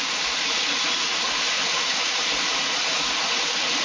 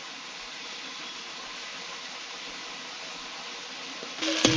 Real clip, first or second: second